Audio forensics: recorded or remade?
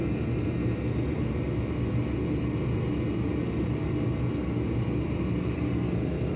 recorded